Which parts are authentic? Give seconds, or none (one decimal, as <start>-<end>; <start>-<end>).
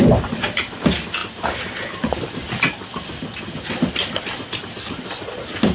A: 0.0-5.7